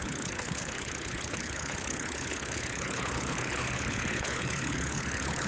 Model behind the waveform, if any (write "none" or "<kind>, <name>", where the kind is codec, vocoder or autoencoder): codec, HILCodec